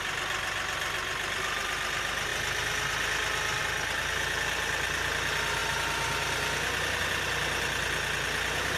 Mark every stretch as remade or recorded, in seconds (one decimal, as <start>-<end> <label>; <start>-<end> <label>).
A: 0.0-8.8 recorded

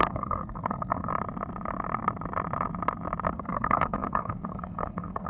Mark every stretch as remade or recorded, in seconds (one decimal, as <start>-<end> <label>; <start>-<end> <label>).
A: 0.0-1.1 remade; 1.1-3.3 recorded; 3.3-5.3 remade

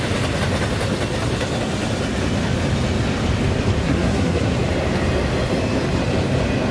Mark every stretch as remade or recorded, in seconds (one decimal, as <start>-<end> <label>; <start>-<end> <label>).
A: 0.0-3.8 recorded; 3.8-4.6 remade; 4.6-6.7 recorded

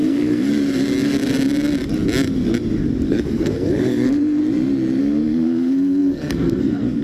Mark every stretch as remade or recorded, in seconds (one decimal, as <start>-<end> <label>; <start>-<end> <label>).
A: 0.0-0.5 remade; 0.5-3.1 recorded; 3.1-4.4 remade; 4.4-5.0 recorded; 5.0-7.0 remade

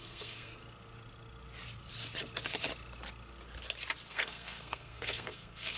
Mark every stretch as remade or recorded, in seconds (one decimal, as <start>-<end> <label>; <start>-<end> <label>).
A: 0.0-0.6 remade; 0.6-4.1 recorded; 4.1-5.8 remade

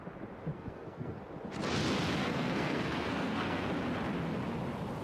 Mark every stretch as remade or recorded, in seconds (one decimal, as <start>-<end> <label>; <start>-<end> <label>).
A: 0.0-0.5 recorded; 0.5-1.2 remade; 1.2-2.2 recorded; 2.2-3.7 remade; 3.7-5.0 recorded

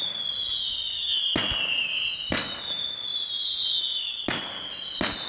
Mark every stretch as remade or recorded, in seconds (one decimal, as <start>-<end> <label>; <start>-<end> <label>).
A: 0.0-5.3 recorded

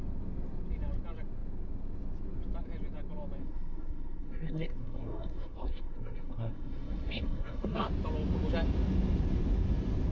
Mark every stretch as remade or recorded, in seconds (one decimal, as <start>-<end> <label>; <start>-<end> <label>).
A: 0.0-3.4 recorded; 3.4-7.9 remade; 7.9-10.1 recorded